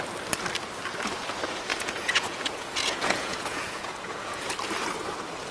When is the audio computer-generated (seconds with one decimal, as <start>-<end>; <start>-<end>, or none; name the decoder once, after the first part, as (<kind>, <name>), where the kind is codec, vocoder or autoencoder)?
1.7-4.5 (vocoder, Vocos)